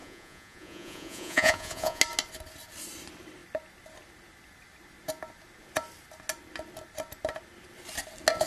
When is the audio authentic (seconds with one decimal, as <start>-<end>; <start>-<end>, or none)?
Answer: 2.0-8.5